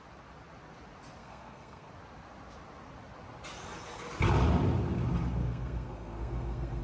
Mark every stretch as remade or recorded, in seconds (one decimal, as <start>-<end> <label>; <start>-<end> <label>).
0.0-1.2 recorded; 1.2-1.9 remade; 1.9-5.4 recorded; 5.4-6.8 remade